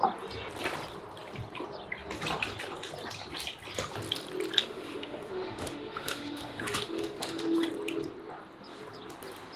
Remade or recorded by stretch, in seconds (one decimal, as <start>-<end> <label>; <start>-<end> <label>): 0.0-4.6 recorded; 4.6-7.7 remade; 7.7-9.6 recorded